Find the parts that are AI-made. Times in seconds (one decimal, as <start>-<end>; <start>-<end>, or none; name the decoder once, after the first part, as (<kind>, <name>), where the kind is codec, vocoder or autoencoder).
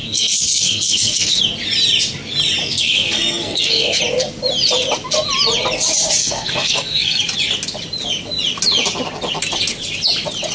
0.0-1.4 (codec, SNAC); 2.6-4.0; 6.2-7.2